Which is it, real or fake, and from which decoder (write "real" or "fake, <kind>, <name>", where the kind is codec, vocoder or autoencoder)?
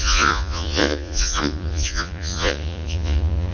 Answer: fake, vocoder, Vocos